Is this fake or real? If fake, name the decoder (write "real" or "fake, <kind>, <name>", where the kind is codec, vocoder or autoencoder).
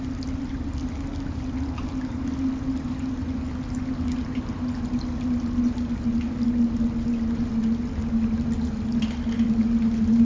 real